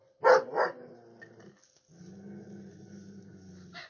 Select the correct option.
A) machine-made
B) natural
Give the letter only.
B